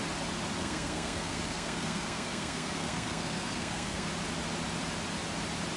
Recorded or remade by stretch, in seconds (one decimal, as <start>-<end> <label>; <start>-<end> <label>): 0.0-0.6 recorded; 0.6-4.1 remade; 4.1-5.8 recorded